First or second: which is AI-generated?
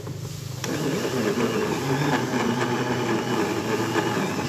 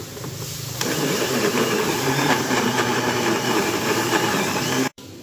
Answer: second